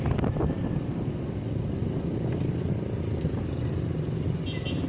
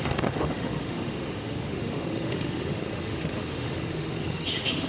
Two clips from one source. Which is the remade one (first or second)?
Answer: second